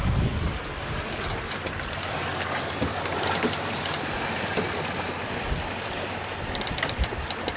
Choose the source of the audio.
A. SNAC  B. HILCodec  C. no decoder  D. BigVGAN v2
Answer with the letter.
D